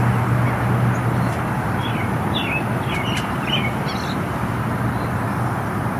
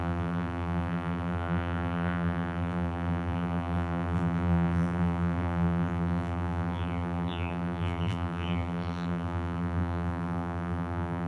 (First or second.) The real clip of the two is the first